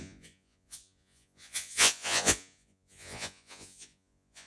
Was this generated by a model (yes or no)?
yes